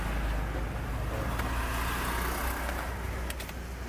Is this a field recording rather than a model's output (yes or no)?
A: yes